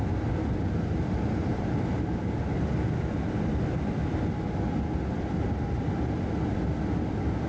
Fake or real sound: real